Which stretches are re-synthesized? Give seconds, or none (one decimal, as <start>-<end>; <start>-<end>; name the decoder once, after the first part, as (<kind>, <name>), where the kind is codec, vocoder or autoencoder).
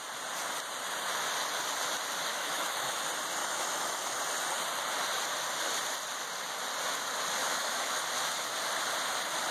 2.3-3.0 (autoencoder, DAC-VAE); 3.4-4.2; 7.4-8.0